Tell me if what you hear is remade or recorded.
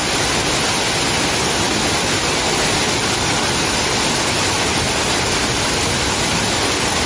recorded